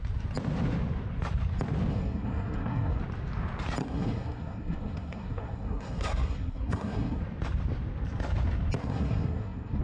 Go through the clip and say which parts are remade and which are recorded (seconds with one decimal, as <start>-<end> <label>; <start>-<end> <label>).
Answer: 0.0-1.9 recorded; 1.9-3.0 remade; 3.0-3.8 recorded; 3.8-7.2 remade; 7.2-8.8 recorded; 8.8-9.8 remade